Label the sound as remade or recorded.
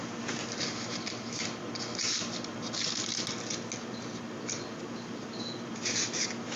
recorded